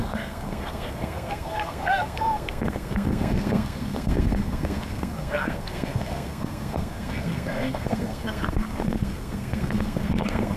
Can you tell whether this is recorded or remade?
remade